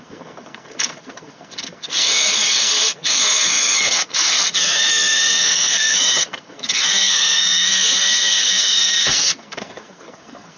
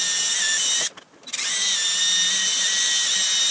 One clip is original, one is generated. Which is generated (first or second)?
first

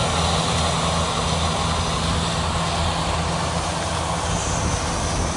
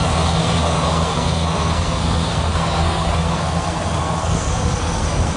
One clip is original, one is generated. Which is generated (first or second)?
second